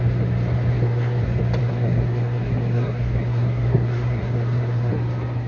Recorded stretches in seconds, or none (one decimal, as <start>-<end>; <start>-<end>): 0.0-0.7; 1.2-1.6; 4.9-5.5